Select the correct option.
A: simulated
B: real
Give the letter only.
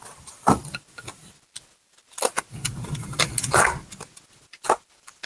B